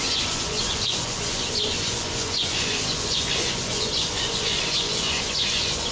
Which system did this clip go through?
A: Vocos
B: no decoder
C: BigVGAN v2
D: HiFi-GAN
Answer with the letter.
A